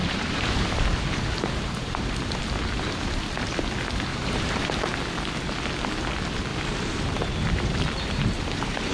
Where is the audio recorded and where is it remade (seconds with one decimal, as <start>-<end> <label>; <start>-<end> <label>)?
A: 0.0-2.4 remade; 2.4-4.1 recorded; 4.1-4.7 remade; 4.7-6.5 recorded; 6.5-8.9 remade

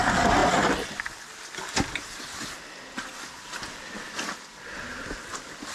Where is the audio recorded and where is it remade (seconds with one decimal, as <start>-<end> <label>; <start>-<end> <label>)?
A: 0.0-5.7 recorded